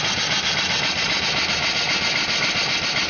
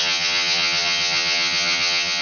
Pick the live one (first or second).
first